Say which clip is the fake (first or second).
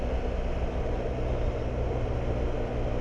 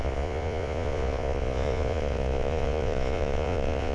second